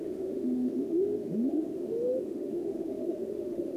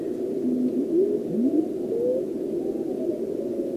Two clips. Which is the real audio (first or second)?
second